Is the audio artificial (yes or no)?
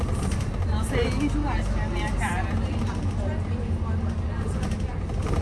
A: no